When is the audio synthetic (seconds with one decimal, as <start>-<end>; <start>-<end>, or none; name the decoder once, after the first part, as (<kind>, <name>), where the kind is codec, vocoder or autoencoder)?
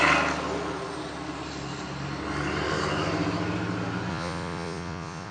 4.1-5.3 (vocoder, Vocos)